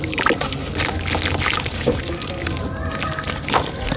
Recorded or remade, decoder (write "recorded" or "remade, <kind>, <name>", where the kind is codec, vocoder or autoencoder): recorded